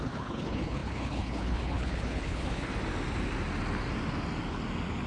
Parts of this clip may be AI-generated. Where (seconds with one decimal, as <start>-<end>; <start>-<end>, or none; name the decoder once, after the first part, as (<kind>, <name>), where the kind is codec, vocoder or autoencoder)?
0.0-2.7 (codec, HILCodec)